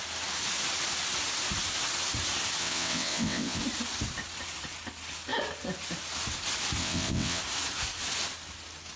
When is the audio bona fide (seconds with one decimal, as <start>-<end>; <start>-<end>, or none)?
0.0-2.6; 3.6-6.8; 7.4-9.0